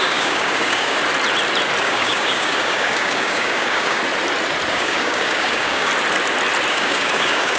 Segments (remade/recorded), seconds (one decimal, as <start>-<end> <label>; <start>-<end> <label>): 0.0-1.0 remade; 1.0-1.8 recorded; 1.8-4.0 remade; 4.0-4.7 recorded; 4.7-5.9 remade; 5.9-6.7 recorded; 6.7-7.6 remade